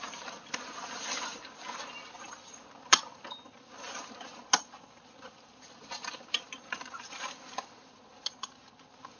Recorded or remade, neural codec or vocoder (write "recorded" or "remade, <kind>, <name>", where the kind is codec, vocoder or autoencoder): recorded